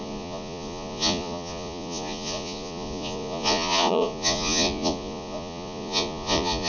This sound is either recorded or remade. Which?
remade